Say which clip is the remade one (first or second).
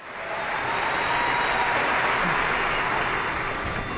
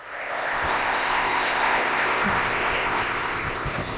second